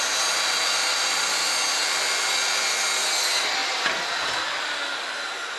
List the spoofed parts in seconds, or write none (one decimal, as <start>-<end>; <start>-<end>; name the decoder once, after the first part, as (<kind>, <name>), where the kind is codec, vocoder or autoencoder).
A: none